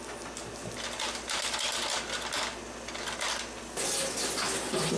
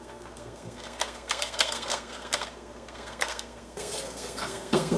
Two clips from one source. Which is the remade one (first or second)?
second